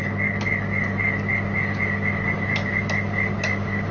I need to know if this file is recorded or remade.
recorded